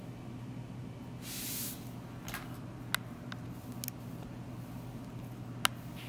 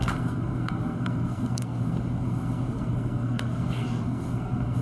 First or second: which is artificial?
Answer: second